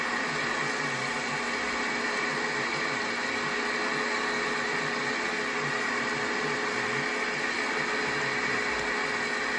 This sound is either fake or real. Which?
real